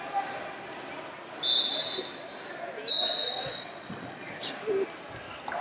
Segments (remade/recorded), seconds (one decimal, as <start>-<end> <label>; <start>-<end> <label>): 0.0-3.2 recorded; 3.2-4.3 remade; 4.3-5.6 recorded